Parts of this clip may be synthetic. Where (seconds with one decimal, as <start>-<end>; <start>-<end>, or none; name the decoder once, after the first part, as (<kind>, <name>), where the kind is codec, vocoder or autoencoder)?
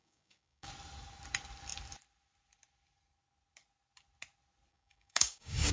0.0-0.7 (codec, DAC); 4.7-5.7